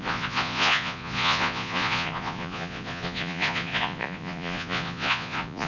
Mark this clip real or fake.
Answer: fake